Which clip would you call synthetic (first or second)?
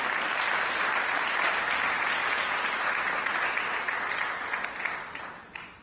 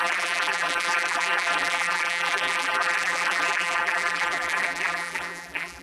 second